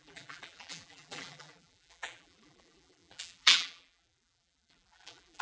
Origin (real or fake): fake